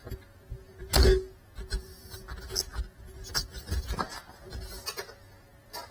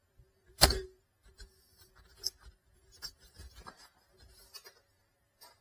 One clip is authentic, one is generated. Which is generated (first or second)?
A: second